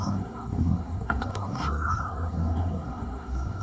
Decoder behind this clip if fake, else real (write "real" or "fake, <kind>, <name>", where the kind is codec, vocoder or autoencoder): fake, codec, SNAC